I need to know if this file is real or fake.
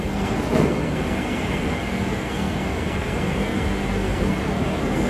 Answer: fake